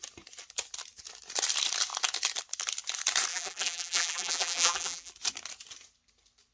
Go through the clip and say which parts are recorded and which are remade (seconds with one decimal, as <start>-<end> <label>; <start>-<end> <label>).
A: 0.0-3.3 recorded; 3.3-5.1 remade; 5.1-6.5 recorded